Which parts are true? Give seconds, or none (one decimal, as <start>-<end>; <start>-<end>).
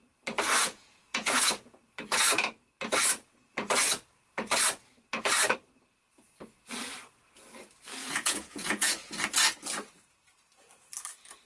0.0-0.6; 1.8-8.0; 9.1-11.5